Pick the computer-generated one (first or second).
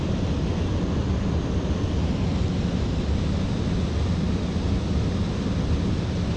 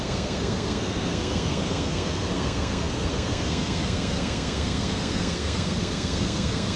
second